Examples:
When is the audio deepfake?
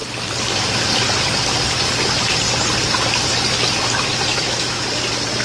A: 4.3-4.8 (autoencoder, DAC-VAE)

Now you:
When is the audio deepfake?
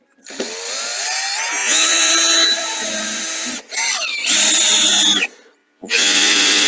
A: 1.6-2.1 (vocoder, Vocos); 5.6-6.7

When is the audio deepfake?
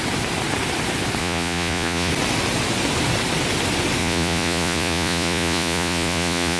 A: 1.2-2.1 (vocoder, Vocos); 4.0-6.6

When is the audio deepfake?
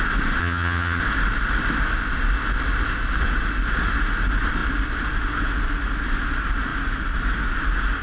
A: 0.4-1.0 (vocoder, HiFi-GAN)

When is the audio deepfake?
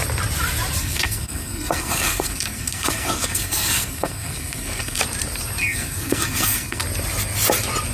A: 0.8-5.0 (codec, SNAC); 5.6-6.8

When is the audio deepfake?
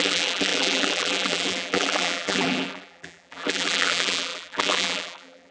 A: 0.0-5.5 (vocoder, BigVGAN v2)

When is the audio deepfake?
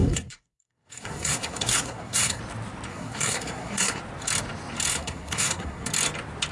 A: 0.0-2.4 (codec, SNAC); 2.9-4.0; 4.9-5.9